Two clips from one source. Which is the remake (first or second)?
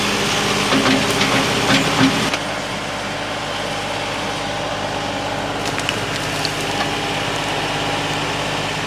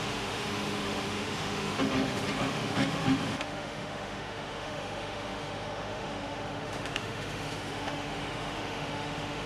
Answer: second